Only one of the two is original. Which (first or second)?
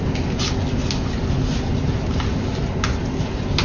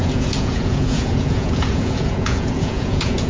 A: first